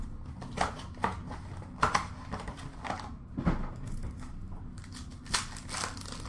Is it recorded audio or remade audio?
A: recorded